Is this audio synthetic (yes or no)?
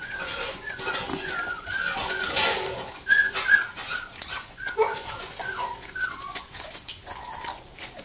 yes